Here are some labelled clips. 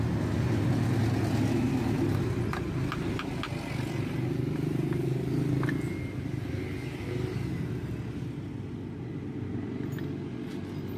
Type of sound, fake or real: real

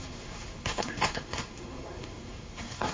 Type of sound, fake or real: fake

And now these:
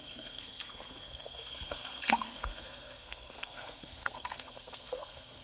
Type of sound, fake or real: fake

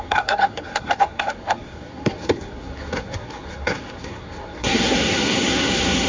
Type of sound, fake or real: fake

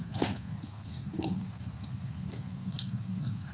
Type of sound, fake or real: fake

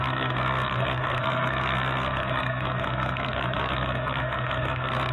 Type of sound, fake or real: fake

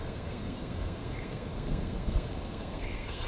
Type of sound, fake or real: fake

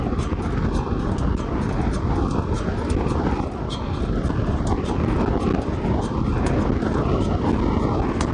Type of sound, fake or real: real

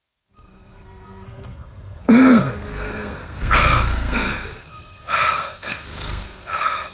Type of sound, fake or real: fake